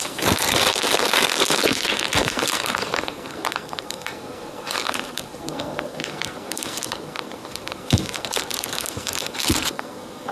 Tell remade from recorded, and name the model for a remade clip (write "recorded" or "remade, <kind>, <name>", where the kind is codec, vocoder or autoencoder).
remade, codec, SNAC